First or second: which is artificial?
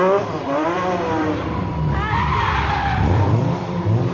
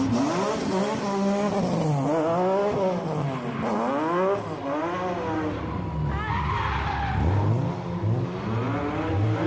first